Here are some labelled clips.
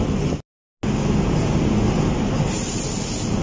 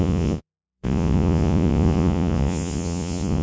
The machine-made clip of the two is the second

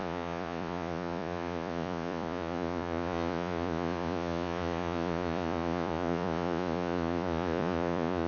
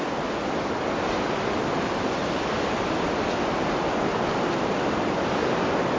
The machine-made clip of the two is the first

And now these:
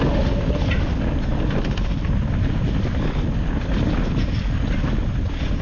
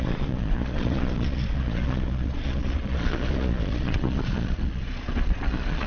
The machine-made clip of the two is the second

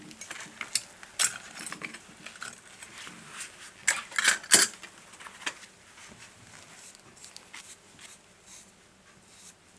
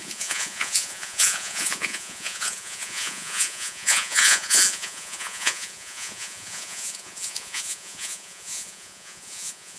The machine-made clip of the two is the second